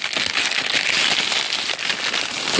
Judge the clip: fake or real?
real